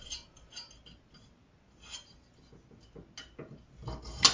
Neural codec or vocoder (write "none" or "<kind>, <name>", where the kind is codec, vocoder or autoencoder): none